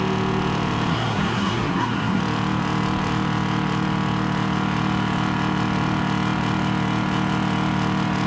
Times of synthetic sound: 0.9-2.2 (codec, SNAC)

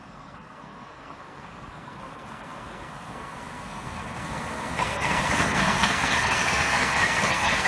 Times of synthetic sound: 0.0-7.7 (codec, SNAC)

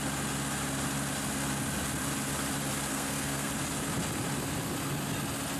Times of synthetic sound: 2.9-3.5 (codec, SNAC)

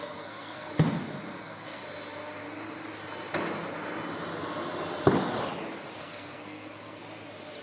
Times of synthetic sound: 0.0-0.7 (codec, SNAC); 1.4-1.8; 6.0-7.0